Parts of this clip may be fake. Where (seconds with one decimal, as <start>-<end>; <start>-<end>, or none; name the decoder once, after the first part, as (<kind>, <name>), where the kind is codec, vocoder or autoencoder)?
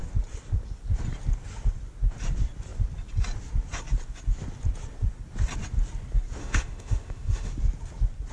6.4-7.5 (autoencoder, DAC-VAE)